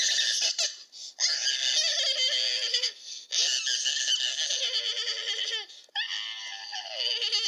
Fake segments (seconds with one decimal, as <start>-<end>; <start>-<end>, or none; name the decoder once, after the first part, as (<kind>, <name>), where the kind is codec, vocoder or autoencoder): 2.7-3.3 (codec, SNAC)